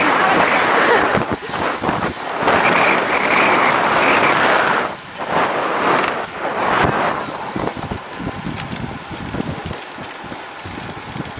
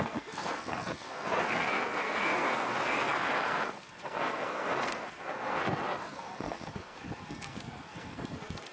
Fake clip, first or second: second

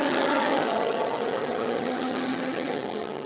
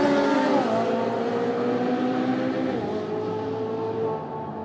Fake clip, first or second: first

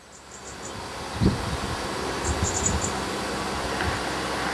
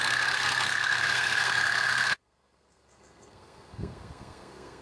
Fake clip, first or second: second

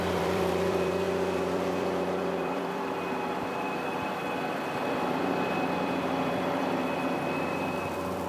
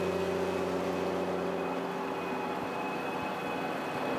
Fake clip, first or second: first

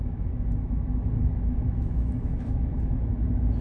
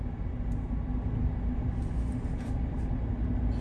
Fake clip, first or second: first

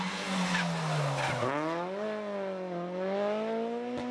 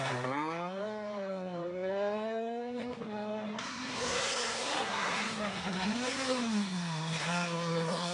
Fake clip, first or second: second